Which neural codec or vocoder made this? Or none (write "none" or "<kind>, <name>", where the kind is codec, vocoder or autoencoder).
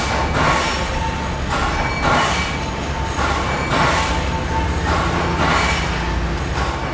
none